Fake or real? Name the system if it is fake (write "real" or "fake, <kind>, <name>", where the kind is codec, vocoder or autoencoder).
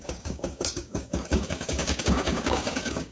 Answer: fake, codec, DAC